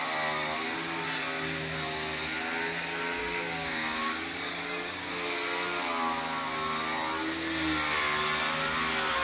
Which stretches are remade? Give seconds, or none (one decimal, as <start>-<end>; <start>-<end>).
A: 3.2-5.1